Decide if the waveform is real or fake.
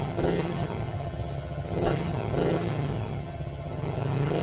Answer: fake